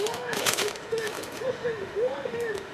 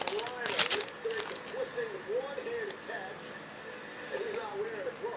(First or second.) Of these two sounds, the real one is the second